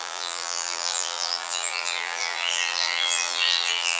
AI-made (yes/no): yes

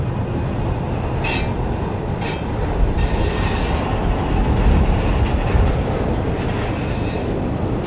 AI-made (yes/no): no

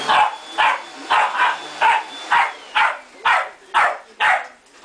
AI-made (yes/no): no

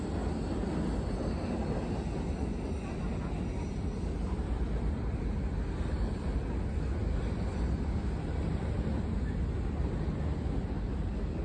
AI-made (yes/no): no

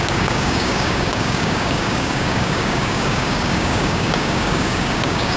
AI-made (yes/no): yes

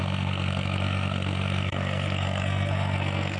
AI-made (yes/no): yes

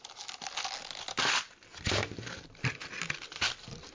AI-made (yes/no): no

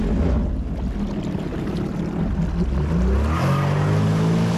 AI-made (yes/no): no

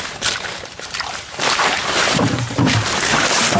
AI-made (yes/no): yes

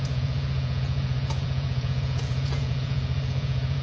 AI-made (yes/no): yes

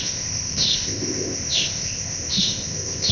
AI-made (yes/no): yes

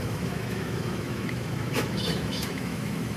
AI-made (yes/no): yes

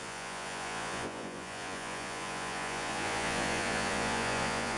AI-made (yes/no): yes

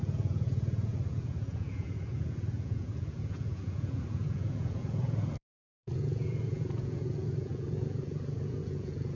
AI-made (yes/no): yes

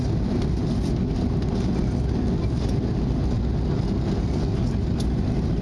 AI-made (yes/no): no